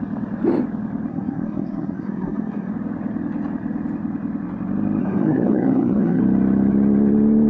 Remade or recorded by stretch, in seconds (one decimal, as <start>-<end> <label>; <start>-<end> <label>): 0.0-1.1 recorded; 1.1-2.7 remade; 2.7-5.0 recorded; 5.0-6.2 remade; 6.2-7.5 recorded